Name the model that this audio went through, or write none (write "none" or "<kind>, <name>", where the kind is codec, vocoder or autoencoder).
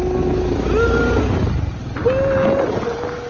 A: none